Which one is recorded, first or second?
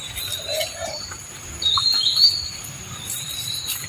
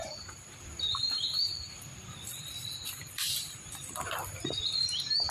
first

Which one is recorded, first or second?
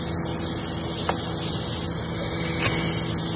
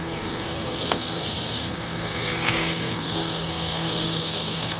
first